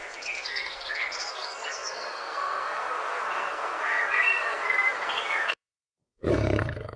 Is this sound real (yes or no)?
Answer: no